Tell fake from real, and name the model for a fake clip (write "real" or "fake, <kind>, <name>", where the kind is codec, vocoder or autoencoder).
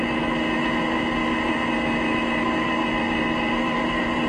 real